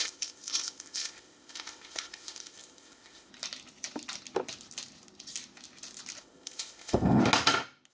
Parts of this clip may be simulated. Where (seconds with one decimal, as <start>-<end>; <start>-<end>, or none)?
0.0-3.3; 6.2-7.2